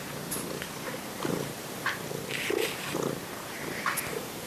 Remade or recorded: recorded